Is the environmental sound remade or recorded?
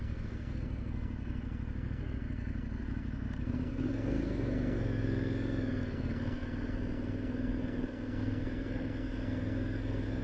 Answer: remade